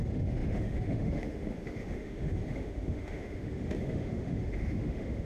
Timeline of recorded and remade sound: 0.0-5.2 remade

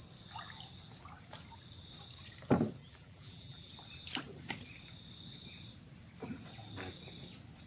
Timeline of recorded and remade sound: 0.0-2.8 recorded; 2.8-3.7 remade; 3.7-7.7 recorded

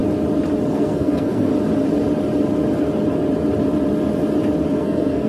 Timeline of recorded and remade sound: 0.0-0.7 recorded; 0.7-1.5 remade; 1.5-4.7 recorded; 4.7-5.3 remade